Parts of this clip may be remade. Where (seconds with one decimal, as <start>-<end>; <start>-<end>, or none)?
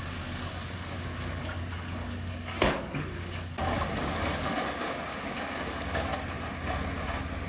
0.0-6.1